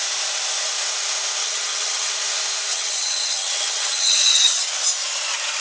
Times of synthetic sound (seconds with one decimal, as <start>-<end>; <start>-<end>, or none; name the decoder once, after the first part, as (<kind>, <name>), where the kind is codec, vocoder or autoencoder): 1.4-2.1 (vocoder, HiFi-GAN); 2.7-4.7